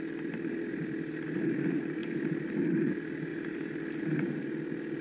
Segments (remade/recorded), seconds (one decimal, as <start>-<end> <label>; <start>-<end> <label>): 0.0-2.0 recorded; 2.0-2.9 remade; 2.9-3.3 recorded; 3.3-4.4 remade; 4.4-5.0 recorded